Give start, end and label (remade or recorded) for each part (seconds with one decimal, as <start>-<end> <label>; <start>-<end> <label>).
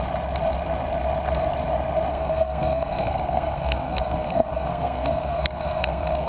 0.0-2.1 recorded; 2.1-6.3 remade